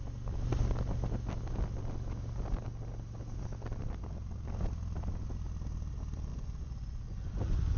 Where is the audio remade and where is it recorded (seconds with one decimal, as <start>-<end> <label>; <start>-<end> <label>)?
0.0-6.3 recorded; 6.3-7.8 remade

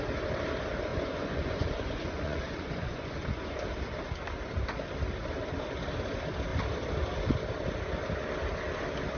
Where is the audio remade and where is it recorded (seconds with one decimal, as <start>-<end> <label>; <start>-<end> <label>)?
0.0-0.9 recorded; 0.9-3.6 remade; 3.6-9.2 recorded

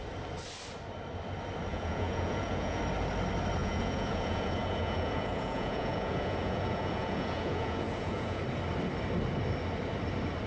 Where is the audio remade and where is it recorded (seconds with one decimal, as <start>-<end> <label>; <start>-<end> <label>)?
0.0-1.7 recorded; 1.7-2.8 remade; 2.8-3.6 recorded; 3.6-8.4 remade; 8.4-10.5 recorded

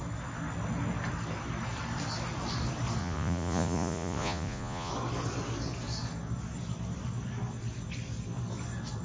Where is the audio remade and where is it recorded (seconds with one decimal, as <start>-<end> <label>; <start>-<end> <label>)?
0.0-3.0 recorded; 3.0-4.9 remade; 4.9-9.0 recorded